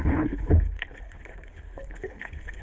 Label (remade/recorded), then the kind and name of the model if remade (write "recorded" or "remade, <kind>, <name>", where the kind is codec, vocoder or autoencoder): remade, codec, HILCodec